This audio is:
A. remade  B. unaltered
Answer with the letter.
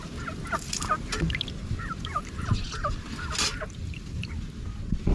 B